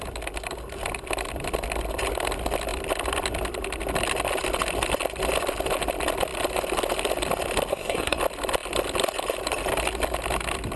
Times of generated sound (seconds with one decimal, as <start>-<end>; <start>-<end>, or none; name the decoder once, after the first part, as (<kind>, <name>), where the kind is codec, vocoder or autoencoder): 7.7-8.2 (codec, SNAC)